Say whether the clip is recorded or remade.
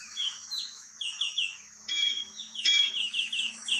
remade